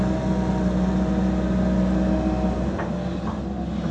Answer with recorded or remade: recorded